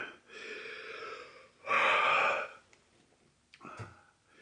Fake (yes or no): no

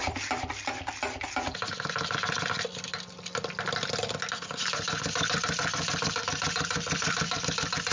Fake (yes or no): no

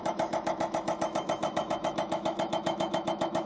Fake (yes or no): yes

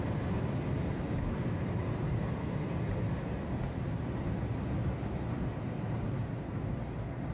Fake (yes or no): no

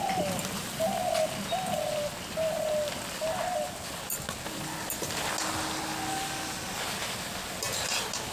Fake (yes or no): no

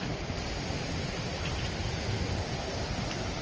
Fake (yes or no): no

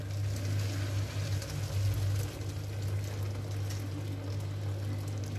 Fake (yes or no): no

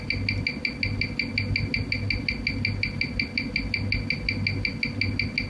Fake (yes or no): no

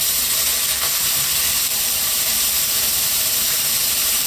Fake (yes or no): no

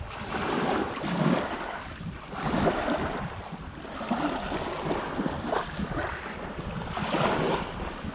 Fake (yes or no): no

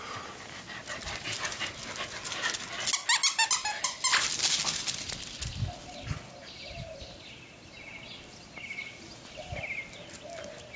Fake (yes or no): no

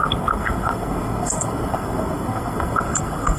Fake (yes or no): yes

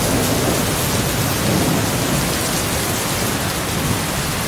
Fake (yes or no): no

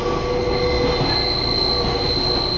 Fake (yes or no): no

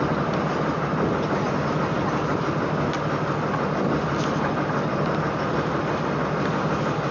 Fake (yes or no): no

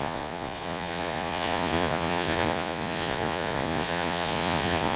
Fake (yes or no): yes